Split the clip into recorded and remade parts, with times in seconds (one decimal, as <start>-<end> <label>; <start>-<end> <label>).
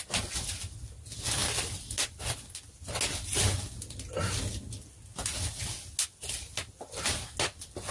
0.0-7.9 recorded